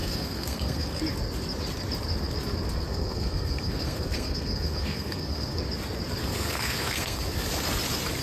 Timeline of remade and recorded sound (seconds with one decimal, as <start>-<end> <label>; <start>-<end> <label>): 0.0-1.0 remade; 1.0-2.9 recorded; 2.9-5.6 remade; 5.6-6.2 recorded; 6.2-7.2 remade; 7.2-8.2 recorded